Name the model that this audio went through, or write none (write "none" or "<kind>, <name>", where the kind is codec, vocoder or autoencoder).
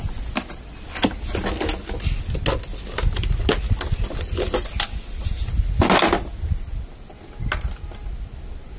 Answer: none